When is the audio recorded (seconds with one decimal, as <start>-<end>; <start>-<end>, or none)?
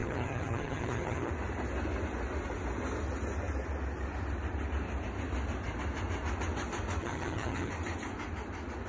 1.3-7.0; 7.7-8.9